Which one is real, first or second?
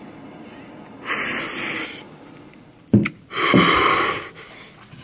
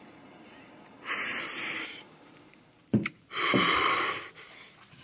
first